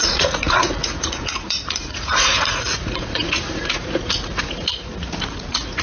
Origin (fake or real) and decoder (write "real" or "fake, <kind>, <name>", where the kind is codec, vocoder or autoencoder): fake, vocoder, Vocos